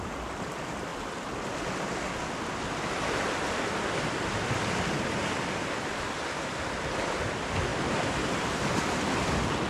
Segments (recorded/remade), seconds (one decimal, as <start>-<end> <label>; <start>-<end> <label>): 0.0-9.7 recorded